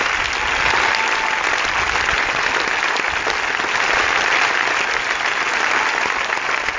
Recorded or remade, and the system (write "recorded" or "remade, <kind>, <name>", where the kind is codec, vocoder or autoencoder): recorded